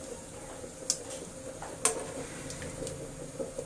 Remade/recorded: recorded